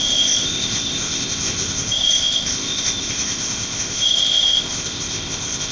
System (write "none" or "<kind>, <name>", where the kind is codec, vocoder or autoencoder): codec, ZipCodec